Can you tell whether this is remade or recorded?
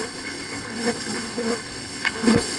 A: remade